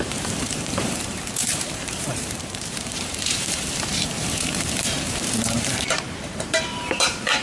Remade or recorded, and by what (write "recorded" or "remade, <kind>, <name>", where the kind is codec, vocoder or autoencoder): remade, vocoder, BigVGAN v2